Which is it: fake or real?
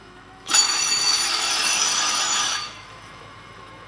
fake